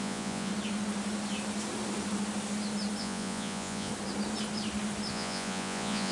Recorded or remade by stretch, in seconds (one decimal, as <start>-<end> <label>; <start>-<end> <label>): 0.0-0.5 remade; 0.5-3.0 recorded; 3.0-3.9 remade; 3.9-5.1 recorded; 5.1-6.1 remade